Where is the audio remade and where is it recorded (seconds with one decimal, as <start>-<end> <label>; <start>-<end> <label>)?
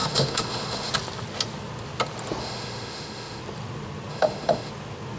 0.0-0.9 remade; 0.9-2.4 recorded; 2.4-3.4 remade; 3.4-4.1 recorded; 4.1-4.7 remade; 4.7-5.2 recorded